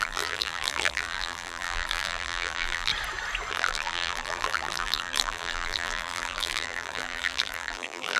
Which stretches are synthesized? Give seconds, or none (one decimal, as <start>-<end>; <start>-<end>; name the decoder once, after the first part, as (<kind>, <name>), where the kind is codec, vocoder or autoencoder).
0.0-2.9 (vocoder, BigVGAN v2); 3.5-8.2